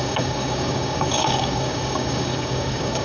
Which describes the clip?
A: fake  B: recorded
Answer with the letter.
A